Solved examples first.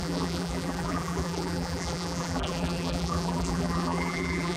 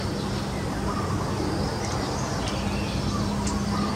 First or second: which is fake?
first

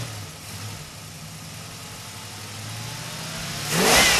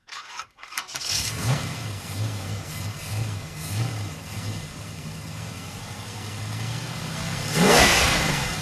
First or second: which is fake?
second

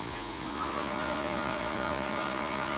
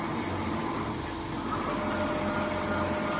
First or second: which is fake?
first